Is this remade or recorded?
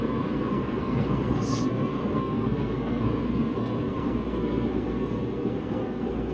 remade